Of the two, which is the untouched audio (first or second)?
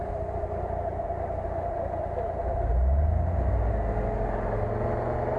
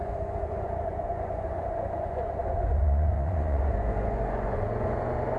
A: first